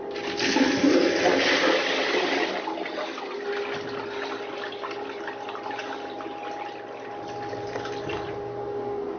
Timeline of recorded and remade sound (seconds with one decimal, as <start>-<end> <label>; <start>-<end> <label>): 0.0-9.2 recorded